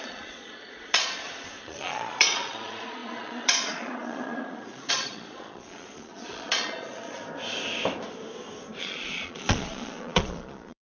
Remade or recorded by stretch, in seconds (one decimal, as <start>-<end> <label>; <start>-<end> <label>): 0.0-7.2 remade; 7.2-8.8 recorded; 8.8-10.8 remade